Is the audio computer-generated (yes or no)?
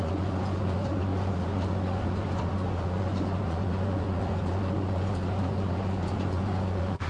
yes